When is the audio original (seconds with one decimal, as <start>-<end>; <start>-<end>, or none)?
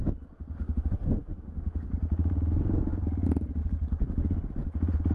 0.0-0.6; 1.9-5.1